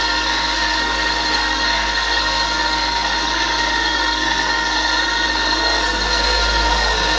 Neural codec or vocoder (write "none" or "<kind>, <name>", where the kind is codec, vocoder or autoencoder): codec, SNAC